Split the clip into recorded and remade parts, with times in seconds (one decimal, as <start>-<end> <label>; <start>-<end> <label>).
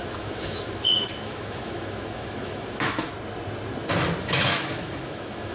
0.0-3.1 remade; 3.1-4.2 recorded; 4.2-5.5 remade